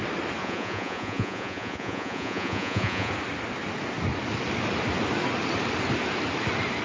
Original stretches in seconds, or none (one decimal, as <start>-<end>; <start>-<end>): 0.0-0.4; 3.1-6.8